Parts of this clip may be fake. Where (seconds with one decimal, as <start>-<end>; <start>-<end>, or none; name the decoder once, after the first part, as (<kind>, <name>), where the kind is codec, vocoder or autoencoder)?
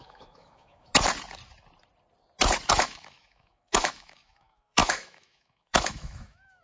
0.0-0.9 (autoencoder, DAC-VAE); 2.7-6.6